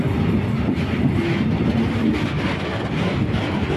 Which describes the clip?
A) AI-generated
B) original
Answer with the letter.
B